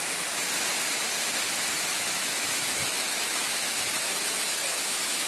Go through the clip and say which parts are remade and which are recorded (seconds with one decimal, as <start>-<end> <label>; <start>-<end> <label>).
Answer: 0.0-1.9 recorded; 1.9-5.3 remade